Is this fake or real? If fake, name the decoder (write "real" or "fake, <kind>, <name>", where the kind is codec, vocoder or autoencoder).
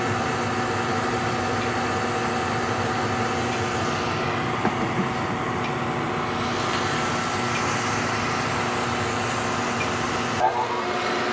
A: real